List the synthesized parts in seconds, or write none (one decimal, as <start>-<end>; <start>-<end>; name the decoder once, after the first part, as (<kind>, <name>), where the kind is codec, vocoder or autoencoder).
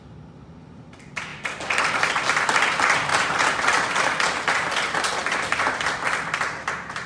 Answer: 3.1-4.0 (vocoder, BigVGAN v2)